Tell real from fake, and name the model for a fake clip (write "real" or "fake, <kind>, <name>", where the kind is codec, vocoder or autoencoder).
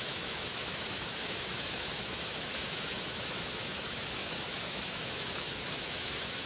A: fake, autoencoder, DAC-VAE